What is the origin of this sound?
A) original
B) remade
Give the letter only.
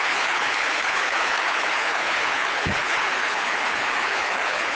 B